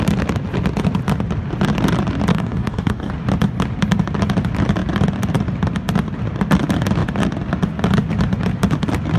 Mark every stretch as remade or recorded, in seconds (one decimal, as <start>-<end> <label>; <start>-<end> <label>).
0.0-2.3 recorded; 2.3-3.1 remade; 3.1-9.2 recorded